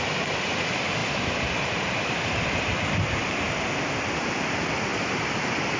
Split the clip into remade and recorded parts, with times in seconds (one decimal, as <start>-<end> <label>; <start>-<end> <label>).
0.0-5.8 remade